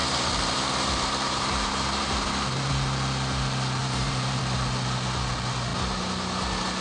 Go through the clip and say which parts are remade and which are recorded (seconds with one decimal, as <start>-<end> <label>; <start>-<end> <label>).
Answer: 0.0-2.7 remade; 2.7-3.8 recorded; 3.8-4.4 remade; 4.4-6.8 recorded